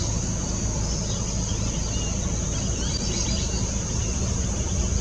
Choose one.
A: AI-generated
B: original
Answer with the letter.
B